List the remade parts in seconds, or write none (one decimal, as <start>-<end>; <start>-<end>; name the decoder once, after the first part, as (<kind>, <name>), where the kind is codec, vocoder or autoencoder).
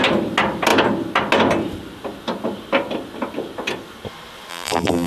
4.5-5.1 (vocoder, BigVGAN v2)